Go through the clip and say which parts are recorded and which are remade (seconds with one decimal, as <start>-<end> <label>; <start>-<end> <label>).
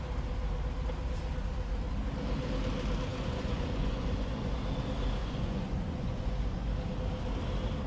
0.0-3.1 recorded; 3.1-4.5 remade; 4.5-5.2 recorded; 5.2-6.7 remade; 6.7-7.9 recorded